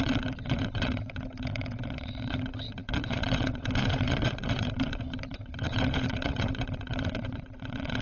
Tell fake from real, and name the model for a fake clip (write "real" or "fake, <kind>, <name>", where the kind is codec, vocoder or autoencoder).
fake, vocoder, WaveNeXt